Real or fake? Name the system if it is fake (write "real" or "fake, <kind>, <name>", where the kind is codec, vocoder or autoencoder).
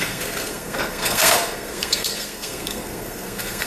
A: fake, codec, SNAC